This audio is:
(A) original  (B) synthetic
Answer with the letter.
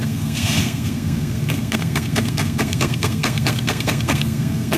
B